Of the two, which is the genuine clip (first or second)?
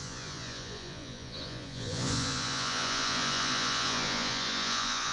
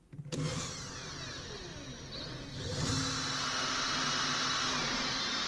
second